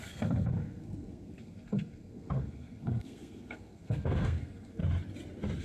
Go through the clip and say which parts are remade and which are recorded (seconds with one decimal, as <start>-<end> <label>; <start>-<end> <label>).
0.0-4.8 remade; 4.8-5.6 recorded